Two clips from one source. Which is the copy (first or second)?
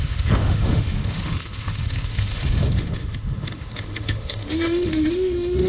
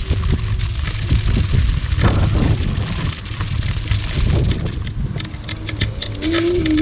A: first